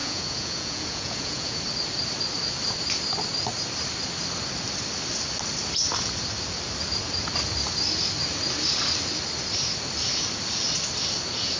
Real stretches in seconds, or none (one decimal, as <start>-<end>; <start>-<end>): 1.6-11.6